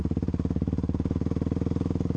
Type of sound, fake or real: real